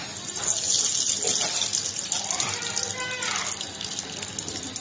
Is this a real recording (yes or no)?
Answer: yes